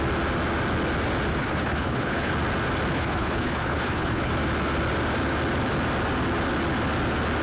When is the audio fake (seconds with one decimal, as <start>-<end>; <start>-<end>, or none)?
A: 1.3-2.3; 2.9-4.3